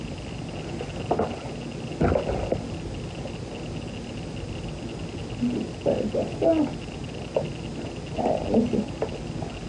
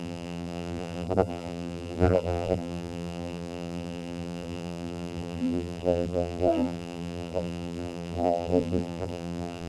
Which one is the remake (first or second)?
second